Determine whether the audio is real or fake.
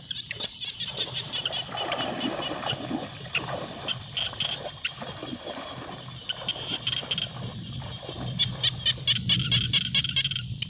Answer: real